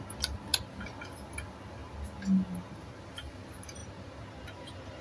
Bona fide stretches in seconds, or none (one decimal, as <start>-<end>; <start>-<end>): 0.0-5.0